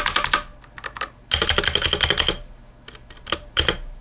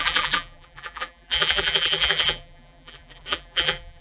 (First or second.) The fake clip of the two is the second